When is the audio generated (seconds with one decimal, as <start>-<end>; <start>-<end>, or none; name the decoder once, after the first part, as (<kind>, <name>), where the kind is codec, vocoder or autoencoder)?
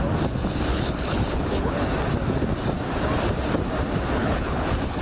0.7-1.7 (codec, HILCodec); 4.2-5.0